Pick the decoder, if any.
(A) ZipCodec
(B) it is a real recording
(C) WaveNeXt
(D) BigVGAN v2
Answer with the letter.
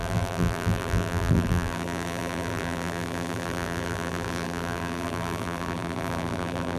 D